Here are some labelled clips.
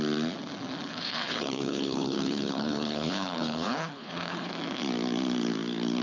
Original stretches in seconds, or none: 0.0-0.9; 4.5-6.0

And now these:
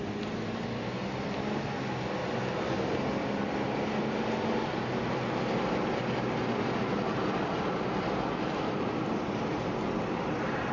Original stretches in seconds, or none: 0.0-10.7

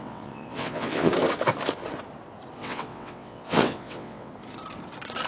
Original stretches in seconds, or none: 1.1-2.6; 4.3-5.3

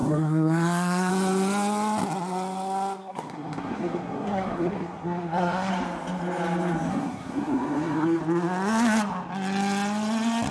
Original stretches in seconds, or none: 1.1-3.0; 5.7-6.9; 8.2-10.5